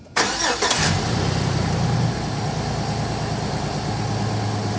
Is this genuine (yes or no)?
yes